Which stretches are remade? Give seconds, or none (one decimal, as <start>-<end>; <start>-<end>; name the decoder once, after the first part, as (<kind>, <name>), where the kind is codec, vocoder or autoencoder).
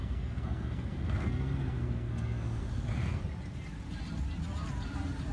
0.0-3.2 (codec, SNAC)